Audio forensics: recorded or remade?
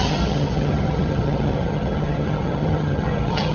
remade